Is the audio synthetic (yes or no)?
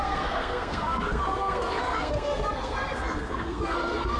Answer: yes